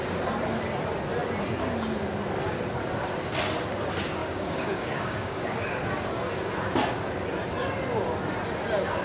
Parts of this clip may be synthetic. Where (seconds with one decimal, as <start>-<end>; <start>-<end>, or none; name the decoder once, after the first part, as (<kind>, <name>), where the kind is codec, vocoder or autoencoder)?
4.2-5.6 (codec, DAC)